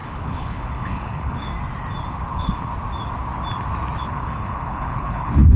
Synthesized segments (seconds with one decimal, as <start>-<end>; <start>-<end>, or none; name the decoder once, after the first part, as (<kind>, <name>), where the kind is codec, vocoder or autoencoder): 0.0-1.5 (codec, HILCodec); 2.3-2.7; 4.0-5.6